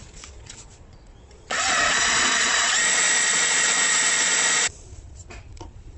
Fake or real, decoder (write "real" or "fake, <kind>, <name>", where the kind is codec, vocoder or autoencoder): fake, vocoder, Vocos